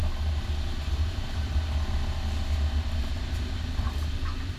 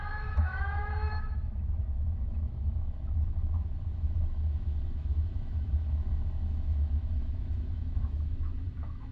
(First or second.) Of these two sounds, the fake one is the second